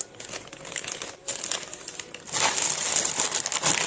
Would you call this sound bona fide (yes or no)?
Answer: yes